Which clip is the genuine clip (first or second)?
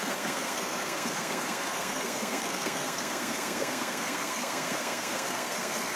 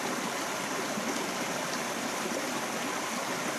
second